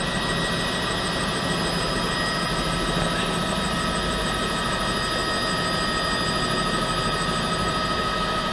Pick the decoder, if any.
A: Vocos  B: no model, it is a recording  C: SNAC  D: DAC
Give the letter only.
B